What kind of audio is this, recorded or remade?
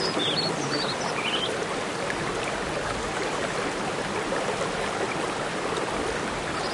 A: recorded